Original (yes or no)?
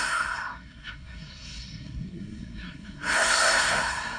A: no